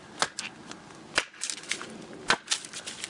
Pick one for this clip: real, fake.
real